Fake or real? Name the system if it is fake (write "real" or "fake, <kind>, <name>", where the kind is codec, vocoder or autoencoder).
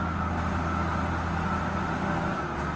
real